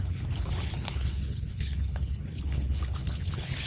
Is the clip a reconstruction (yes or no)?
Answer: yes